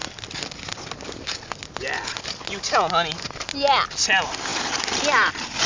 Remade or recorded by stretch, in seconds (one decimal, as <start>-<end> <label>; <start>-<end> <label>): 0.0-5.7 recorded